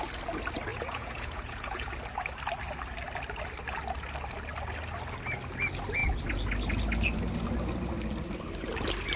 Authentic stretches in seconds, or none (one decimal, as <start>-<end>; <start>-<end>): 0.0-0.7; 1.9-9.2